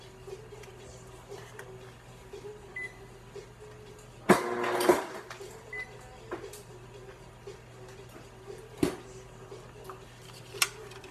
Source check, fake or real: real